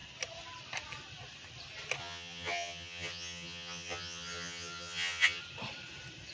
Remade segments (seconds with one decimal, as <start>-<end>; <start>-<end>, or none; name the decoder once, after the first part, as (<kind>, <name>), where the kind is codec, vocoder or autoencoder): 2.0-5.4 (vocoder, HiFi-GAN)

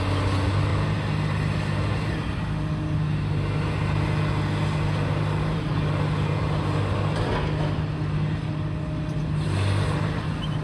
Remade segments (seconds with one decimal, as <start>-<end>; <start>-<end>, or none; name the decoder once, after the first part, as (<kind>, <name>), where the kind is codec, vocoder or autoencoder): none

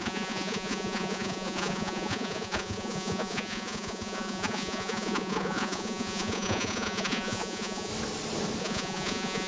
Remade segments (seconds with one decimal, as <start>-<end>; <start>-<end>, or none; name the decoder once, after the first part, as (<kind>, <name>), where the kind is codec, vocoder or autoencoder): 0.0-7.9 (vocoder, Vocos); 8.6-9.5

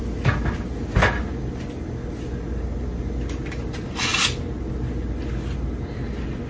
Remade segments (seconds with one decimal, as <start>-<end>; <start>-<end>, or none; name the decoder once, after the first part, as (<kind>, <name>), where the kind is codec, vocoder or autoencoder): none

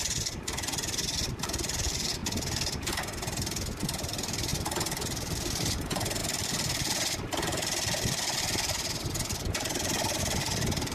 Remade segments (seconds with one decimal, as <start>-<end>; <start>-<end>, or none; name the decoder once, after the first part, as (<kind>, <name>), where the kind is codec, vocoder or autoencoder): 0.0-2.2 (vocoder, BigVGAN v2); 3.8-10.9

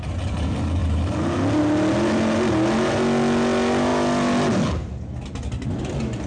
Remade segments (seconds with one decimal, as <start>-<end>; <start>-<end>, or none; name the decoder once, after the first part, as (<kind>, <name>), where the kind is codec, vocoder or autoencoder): none

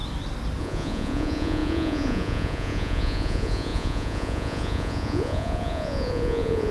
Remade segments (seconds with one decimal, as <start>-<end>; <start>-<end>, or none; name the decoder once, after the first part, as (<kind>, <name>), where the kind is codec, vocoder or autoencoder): 0.6-6.7 (vocoder, Vocos)

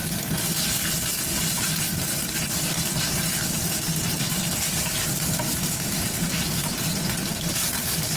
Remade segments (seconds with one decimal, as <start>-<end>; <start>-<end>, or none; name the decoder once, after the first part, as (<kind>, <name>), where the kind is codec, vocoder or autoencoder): none